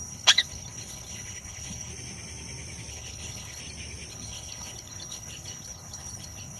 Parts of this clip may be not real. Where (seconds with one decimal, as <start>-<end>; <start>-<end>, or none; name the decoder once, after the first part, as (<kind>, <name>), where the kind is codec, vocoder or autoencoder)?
0.0-1.9 (codec, HILCodec); 2.9-3.6; 4.1-6.6